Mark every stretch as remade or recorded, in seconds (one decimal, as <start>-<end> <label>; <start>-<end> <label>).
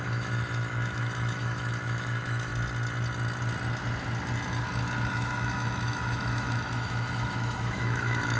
0.0-2.5 remade; 2.5-5.1 recorded; 5.1-8.4 remade